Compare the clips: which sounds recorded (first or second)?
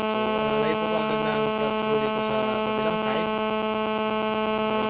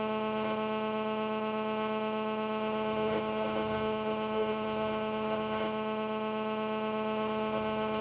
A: first